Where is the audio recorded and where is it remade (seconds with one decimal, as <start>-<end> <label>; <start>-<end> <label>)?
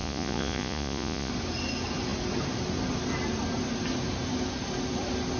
0.0-1.3 remade; 1.3-5.4 recorded